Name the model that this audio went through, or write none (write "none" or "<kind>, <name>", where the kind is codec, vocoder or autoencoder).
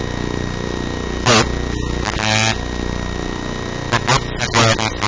none